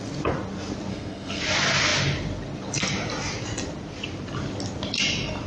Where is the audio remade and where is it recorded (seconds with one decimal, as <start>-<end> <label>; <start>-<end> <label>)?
0.0-0.9 recorded; 0.9-1.4 remade; 1.4-5.5 recorded